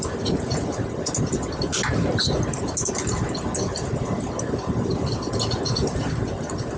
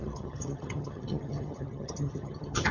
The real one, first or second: first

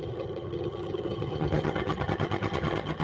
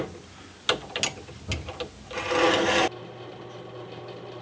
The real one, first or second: second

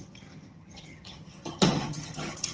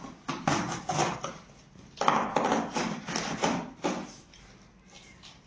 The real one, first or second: second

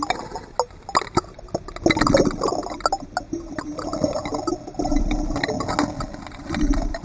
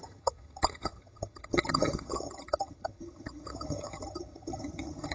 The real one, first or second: first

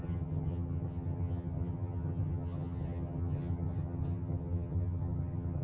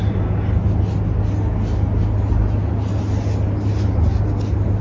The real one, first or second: second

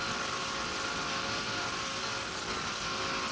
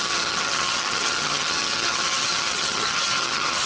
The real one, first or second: first